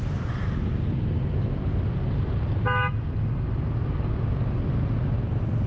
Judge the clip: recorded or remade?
recorded